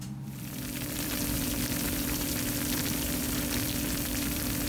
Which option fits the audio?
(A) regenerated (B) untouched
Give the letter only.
A